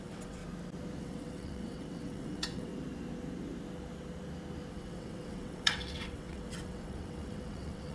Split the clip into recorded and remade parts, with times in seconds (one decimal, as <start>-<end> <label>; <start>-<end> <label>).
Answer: 0.0-0.4 remade; 0.4-1.0 recorded; 1.0-2.7 remade; 2.7-4.7 recorded; 4.7-7.9 remade